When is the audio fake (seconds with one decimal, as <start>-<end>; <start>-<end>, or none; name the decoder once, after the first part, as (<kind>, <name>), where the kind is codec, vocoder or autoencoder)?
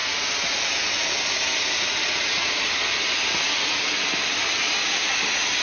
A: 2.6-5.6 (vocoder, BigVGAN v2)